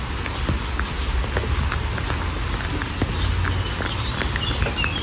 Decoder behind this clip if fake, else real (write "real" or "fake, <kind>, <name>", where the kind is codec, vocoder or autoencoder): real